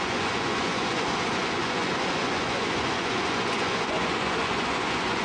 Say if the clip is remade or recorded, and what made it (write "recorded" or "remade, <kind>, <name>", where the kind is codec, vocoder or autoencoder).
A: remade, vocoder, Vocos